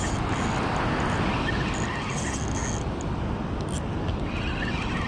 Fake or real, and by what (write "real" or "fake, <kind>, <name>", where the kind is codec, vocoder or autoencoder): real